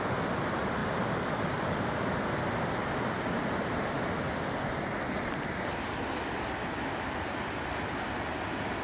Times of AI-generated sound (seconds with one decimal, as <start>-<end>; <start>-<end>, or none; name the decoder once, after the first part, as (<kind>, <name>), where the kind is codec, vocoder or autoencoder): none